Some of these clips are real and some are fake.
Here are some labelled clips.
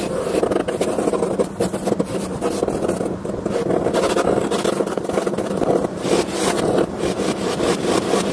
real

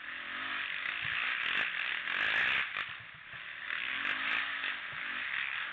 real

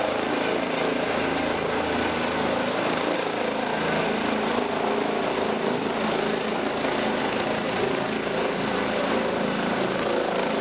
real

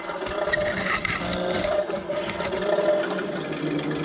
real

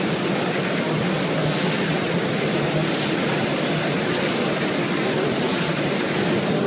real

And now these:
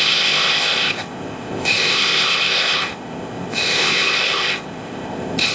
fake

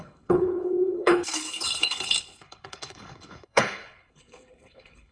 fake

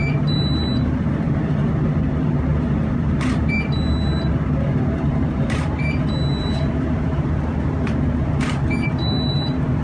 fake